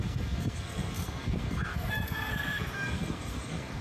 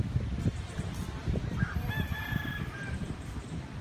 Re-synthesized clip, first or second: first